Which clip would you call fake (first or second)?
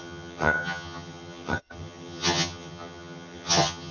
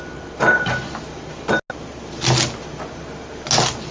first